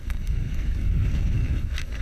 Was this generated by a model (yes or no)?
yes